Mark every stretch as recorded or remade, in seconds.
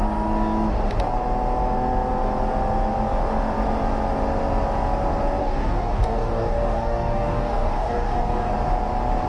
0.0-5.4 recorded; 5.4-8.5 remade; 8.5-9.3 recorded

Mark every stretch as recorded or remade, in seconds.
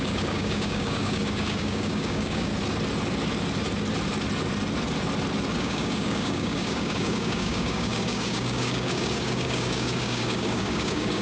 0.0-2.5 remade; 2.5-5.6 recorded; 5.6-11.2 remade